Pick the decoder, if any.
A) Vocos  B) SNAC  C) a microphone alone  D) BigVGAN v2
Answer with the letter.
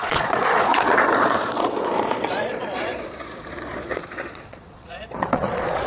A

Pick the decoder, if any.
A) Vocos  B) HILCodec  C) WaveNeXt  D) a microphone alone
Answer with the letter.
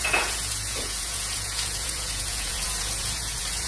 A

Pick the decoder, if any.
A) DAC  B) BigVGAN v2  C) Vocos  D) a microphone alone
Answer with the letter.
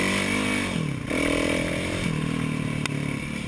D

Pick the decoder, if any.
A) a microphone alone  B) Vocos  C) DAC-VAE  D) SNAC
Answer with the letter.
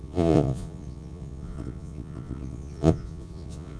B